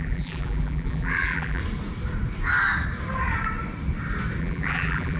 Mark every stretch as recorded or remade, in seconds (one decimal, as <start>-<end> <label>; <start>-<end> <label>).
0.0-1.6 remade; 1.6-4.4 recorded; 4.4-5.2 remade